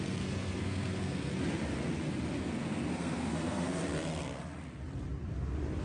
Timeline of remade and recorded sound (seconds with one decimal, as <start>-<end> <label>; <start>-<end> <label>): 0.0-1.3 remade; 1.3-2.4 recorded; 2.4-3.8 remade; 3.8-5.8 recorded